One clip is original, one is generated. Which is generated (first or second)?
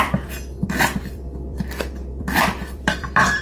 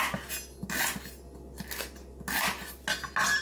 first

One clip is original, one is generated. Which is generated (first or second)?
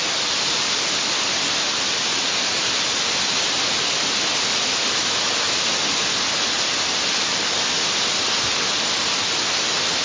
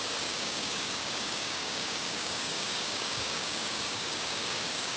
second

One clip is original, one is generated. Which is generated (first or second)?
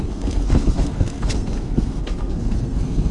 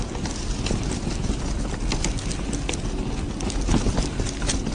first